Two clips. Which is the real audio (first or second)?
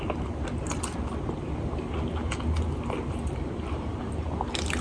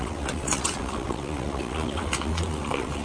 first